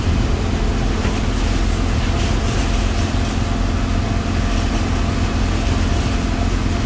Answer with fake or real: real